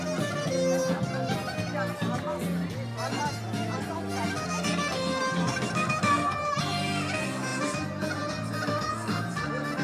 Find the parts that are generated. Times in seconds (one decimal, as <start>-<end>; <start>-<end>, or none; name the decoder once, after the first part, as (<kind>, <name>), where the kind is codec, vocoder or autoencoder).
none